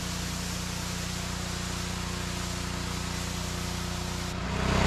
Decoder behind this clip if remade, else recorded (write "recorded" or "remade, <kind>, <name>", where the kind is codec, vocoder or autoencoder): recorded